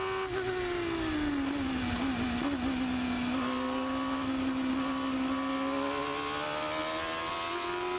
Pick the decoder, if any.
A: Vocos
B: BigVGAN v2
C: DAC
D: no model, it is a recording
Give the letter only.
D